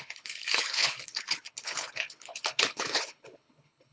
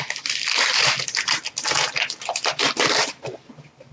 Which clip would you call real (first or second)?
second